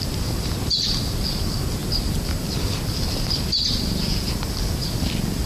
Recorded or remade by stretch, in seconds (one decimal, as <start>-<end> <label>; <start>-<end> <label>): 0.0-5.5 recorded